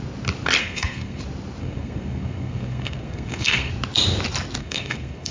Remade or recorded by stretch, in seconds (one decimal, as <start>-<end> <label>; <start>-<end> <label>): 0.0-0.6 recorded; 0.6-1.2 remade; 1.2-1.6 recorded; 1.6-3.7 remade; 3.7-4.6 recorded; 4.6-5.3 remade